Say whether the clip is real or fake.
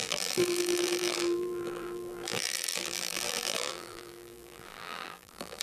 fake